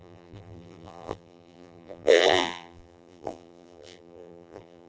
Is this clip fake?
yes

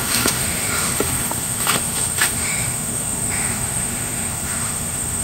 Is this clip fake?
yes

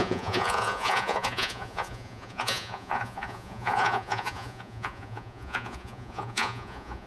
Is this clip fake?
yes